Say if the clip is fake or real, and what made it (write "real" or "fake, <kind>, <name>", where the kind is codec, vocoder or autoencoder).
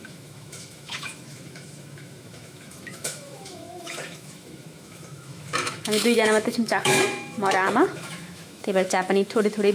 fake, autoencoder, DAC-VAE